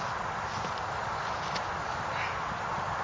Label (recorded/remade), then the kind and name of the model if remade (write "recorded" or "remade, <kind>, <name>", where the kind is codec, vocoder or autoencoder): recorded